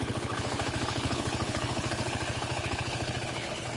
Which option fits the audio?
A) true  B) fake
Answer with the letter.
B